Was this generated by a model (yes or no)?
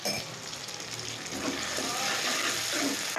no